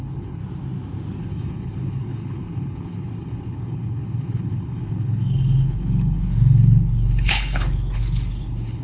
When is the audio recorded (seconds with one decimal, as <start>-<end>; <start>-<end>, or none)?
0.4-1.2